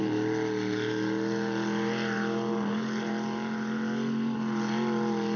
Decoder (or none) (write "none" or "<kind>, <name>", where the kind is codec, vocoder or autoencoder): none